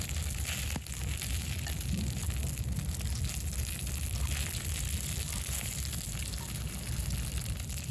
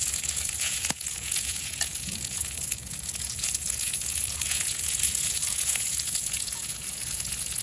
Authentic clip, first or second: first